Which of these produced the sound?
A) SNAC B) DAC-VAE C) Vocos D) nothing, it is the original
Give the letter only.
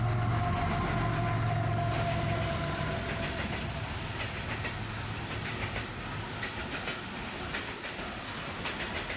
D